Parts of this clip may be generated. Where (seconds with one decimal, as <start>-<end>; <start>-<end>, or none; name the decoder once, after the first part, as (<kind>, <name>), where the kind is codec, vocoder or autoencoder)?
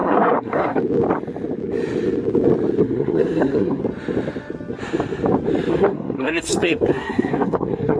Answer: 0.0-0.8 (codec, SNAC); 2.8-3.8; 5.7-8.0